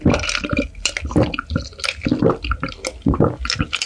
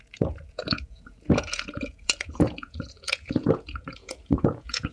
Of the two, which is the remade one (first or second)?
second